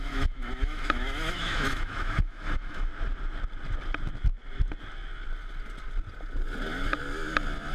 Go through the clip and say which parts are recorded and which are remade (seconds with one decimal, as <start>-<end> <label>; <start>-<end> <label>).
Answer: 0.0-2.9 remade; 2.9-7.7 recorded